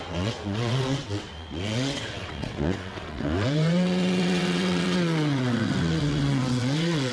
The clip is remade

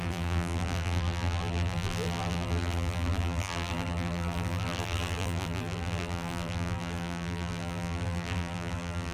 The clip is remade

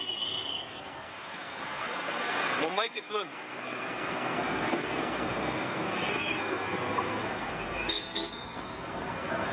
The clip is remade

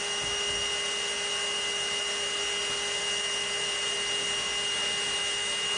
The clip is recorded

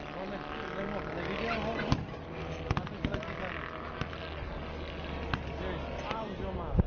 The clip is recorded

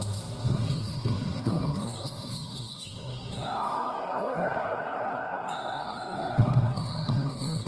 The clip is remade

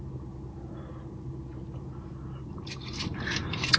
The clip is recorded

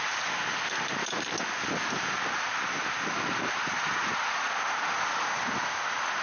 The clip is recorded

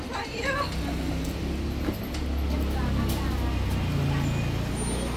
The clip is recorded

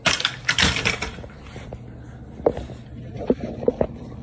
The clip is recorded